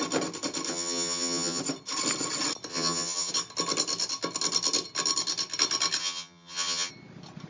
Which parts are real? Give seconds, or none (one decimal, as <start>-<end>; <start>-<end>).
0.0-0.7; 1.6-2.7; 3.3-6.0; 6.9-7.5